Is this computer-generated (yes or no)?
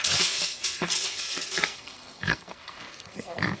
yes